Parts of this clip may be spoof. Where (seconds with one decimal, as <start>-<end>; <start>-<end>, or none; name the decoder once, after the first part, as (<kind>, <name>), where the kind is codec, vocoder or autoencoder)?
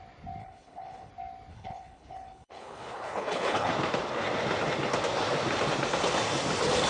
0.4-1.1 (codec, HILCodec); 1.5-3.7